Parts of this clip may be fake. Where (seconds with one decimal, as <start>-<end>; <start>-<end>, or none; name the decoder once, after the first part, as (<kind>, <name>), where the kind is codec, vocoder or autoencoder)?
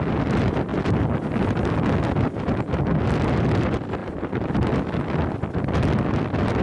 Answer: 4.0-4.7 (vocoder, BigVGAN v2)